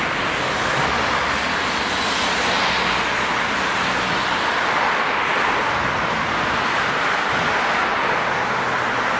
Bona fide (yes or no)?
yes